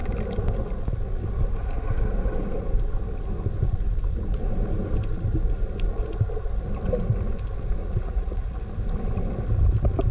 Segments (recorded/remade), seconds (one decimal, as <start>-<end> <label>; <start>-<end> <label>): 0.0-7.8 recorded; 7.8-8.6 remade; 8.6-10.1 recorded

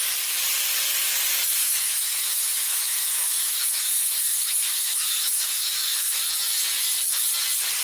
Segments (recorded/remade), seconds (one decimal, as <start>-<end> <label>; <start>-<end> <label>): 0.0-1.6 recorded; 1.6-6.3 remade; 6.3-7.8 recorded

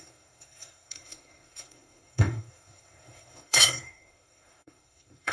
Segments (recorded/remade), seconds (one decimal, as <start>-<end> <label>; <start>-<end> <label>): 0.0-5.3 remade